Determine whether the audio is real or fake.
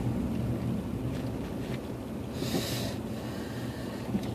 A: real